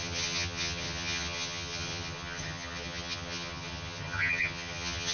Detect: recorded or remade remade